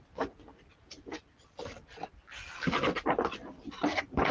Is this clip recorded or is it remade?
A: recorded